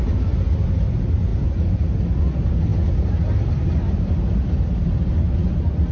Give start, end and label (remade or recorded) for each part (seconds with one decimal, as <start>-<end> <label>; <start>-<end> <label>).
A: 0.0-5.9 recorded